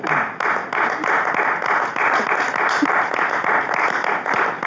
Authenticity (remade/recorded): recorded